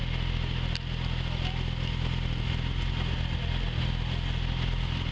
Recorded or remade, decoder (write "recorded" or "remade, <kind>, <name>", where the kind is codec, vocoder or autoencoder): recorded